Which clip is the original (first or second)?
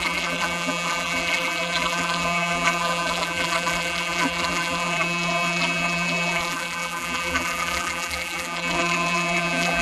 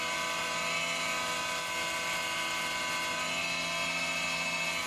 second